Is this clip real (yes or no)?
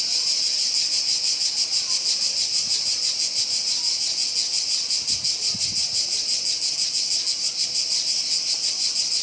yes